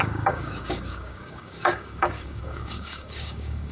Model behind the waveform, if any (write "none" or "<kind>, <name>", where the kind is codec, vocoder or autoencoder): codec, DAC